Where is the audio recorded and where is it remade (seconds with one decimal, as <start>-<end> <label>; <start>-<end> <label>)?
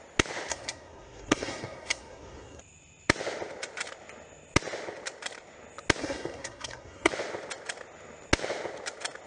0.0-0.5 recorded; 0.5-2.6 remade; 2.6-6.0 recorded; 6.0-7.1 remade; 7.1-9.3 recorded